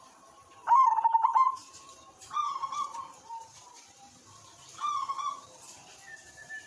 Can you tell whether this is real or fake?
fake